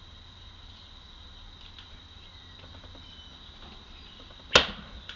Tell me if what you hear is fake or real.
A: real